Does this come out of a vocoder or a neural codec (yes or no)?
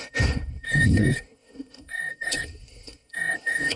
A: yes